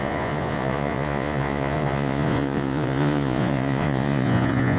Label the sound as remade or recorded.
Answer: remade